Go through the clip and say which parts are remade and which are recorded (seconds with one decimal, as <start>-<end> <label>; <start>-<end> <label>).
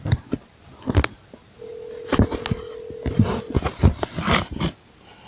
0.0-5.3 recorded